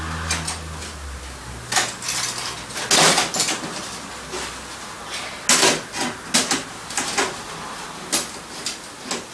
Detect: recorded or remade recorded